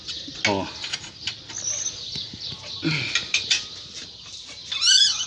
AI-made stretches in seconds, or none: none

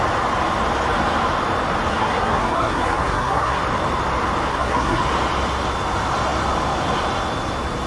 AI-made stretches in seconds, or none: 1.9-3.6; 4.5-5.0

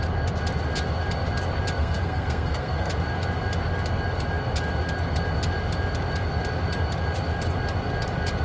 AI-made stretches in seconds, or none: 1.8-2.9

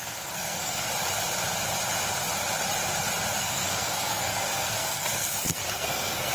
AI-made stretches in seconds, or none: 0.0-0.9; 3.4-6.3

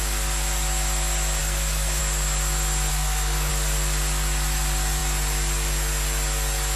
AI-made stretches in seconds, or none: 1.4-2.0; 2.9-3.5

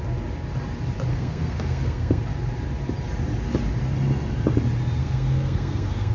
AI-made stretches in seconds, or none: 1.1-2.2; 5.0-6.1

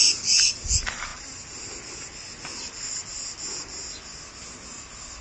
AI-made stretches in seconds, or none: none

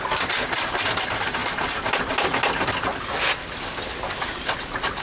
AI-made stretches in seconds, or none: none